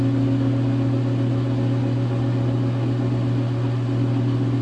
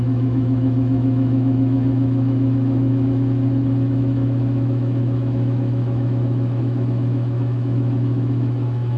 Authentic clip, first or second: first